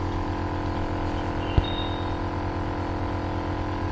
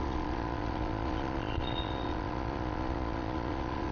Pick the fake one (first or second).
second